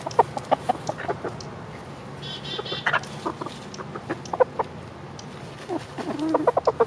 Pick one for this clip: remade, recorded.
recorded